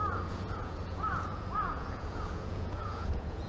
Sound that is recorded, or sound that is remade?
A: remade